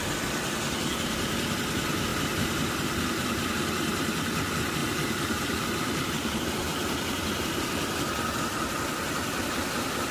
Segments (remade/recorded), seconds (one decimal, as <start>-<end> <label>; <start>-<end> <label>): 0.0-2.1 recorded; 2.1-3.5 remade; 3.5-4.8 recorded; 4.8-6.1 remade; 6.1-10.1 recorded